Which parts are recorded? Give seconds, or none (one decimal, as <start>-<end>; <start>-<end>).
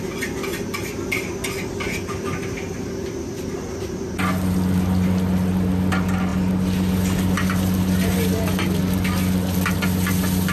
0.0-10.5